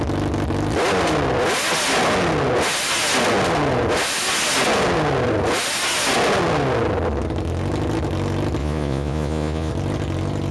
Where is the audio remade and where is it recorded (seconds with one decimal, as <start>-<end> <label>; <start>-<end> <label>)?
0.0-8.6 recorded; 8.6-9.7 remade; 9.7-10.5 recorded